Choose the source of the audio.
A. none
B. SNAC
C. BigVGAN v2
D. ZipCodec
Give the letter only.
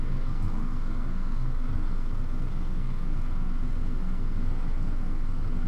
B